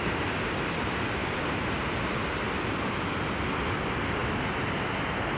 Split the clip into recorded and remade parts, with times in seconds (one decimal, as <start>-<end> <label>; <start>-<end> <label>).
0.0-1.2 recorded; 1.2-1.9 remade; 1.9-4.2 recorded; 4.2-4.9 remade; 4.9-5.4 recorded